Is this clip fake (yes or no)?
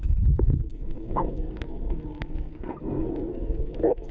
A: yes